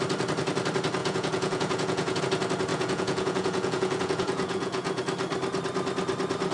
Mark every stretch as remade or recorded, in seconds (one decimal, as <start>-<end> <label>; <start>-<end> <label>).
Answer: 0.0-1.0 recorded; 1.0-2.2 remade; 2.2-2.7 recorded; 2.7-5.0 remade; 5.0-6.5 recorded

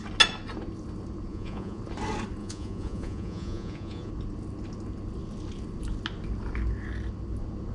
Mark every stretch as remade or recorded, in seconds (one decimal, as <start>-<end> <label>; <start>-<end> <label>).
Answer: 0.0-1.3 recorded; 1.3-1.8 remade; 1.8-2.4 recorded; 2.4-4.1 remade; 4.1-7.7 recorded

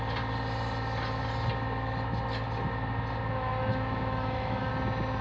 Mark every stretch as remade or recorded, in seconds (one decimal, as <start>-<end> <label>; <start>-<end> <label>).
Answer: 0.0-3.7 recorded; 3.7-4.7 remade; 4.7-5.2 recorded